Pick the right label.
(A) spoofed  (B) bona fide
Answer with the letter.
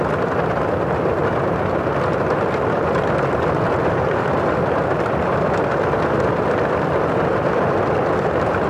A